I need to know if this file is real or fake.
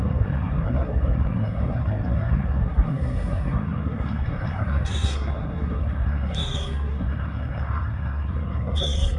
fake